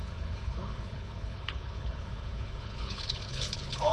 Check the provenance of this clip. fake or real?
fake